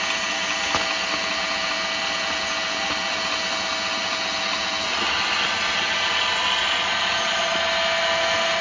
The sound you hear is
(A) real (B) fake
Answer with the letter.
A